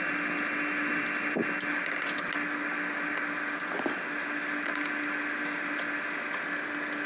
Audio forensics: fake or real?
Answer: real